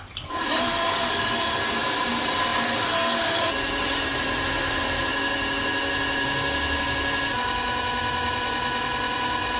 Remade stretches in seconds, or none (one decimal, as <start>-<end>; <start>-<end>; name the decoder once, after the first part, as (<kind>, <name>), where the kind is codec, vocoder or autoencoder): 0.0-2.5 (vocoder, BigVGAN v2); 3.2-5.1